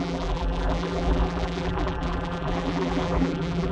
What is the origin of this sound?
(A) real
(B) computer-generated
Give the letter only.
B